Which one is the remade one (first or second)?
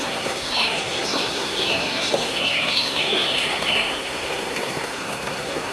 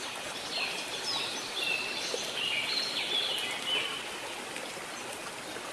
first